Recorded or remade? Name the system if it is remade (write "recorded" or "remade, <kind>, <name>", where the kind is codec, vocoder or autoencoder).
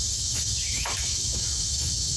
remade, autoencoder, DAC-VAE